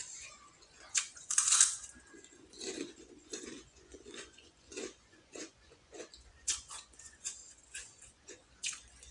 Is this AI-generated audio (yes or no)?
yes